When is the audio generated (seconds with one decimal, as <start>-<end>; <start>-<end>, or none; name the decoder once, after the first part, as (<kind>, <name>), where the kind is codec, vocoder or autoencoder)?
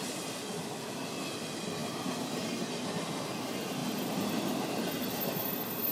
1.8-2.4 (vocoder, BigVGAN v2); 3.8-5.5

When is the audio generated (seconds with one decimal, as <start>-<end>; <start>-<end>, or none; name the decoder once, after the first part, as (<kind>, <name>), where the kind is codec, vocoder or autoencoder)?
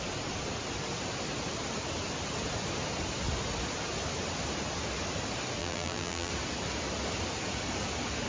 5.6-6.3 (vocoder, BigVGAN v2)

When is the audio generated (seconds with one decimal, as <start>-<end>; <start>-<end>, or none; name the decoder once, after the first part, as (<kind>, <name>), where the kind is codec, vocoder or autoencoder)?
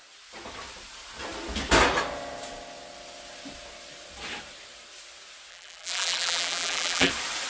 5.5-7.1 (vocoder, BigVGAN v2)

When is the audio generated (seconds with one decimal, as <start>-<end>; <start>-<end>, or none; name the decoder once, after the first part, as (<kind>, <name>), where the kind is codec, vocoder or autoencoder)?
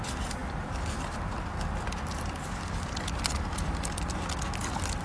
none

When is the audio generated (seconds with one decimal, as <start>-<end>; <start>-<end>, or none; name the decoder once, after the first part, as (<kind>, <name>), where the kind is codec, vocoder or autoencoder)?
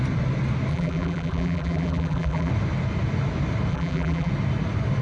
0.7-2.5 (vocoder, BigVGAN v2); 3.7-4.3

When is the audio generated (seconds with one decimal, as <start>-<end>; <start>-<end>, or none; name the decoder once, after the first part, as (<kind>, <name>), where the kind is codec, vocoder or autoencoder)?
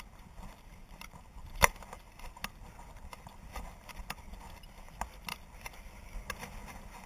5.3-6.1 (vocoder, BigVGAN v2)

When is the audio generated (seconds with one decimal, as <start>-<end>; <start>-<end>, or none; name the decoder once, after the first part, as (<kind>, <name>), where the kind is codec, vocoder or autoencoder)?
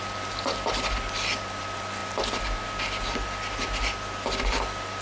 none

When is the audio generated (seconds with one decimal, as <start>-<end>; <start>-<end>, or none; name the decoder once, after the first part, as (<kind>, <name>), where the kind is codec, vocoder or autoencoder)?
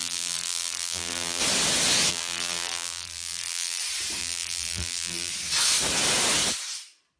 0.0-1.4 (vocoder, BigVGAN v2); 2.1-3.8; 4.2-5.3